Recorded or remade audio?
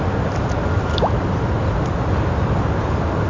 recorded